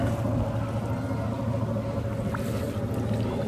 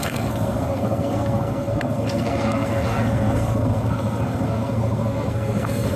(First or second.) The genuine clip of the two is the first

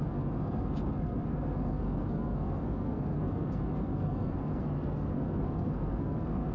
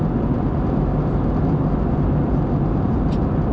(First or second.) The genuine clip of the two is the second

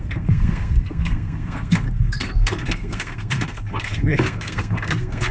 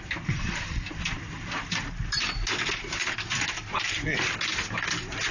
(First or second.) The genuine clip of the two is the second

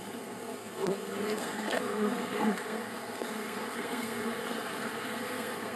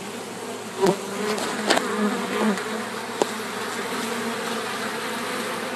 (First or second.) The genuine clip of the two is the second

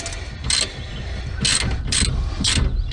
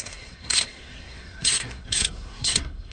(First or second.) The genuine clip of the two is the first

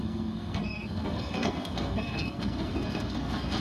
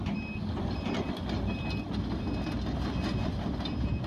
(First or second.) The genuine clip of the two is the second